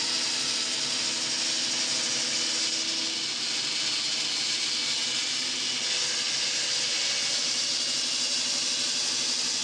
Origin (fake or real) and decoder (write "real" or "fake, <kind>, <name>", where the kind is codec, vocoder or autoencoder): real